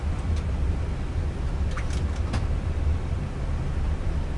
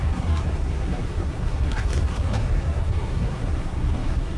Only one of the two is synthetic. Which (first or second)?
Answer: second